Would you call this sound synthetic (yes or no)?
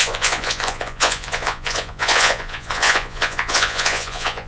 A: yes